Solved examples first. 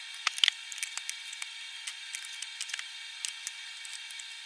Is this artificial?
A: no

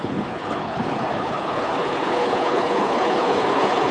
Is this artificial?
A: yes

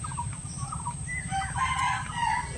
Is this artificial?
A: no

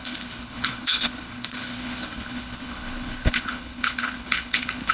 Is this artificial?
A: yes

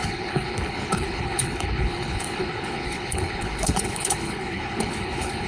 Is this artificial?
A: yes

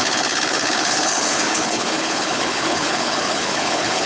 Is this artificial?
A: yes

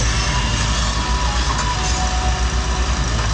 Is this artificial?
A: no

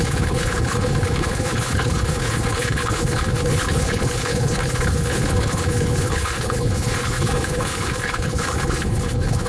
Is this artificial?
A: yes